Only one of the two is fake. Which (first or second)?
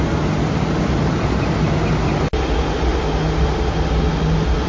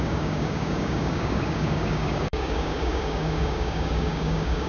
second